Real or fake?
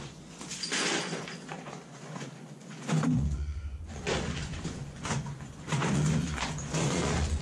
fake